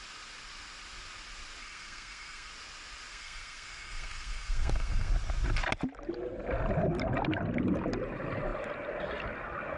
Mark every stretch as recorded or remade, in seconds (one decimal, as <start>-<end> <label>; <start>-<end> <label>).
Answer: 0.0-1.6 recorded; 1.6-2.5 remade; 2.5-3.1 recorded; 3.1-5.1 remade; 5.1-9.8 recorded